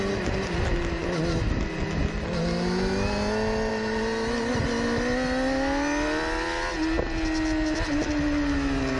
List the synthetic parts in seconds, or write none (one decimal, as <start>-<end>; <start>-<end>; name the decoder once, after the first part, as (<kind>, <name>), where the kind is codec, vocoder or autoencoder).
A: none